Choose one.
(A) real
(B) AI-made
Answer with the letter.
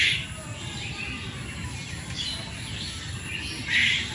A